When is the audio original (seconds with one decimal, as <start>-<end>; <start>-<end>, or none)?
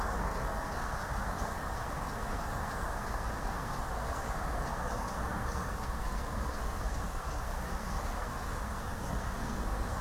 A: none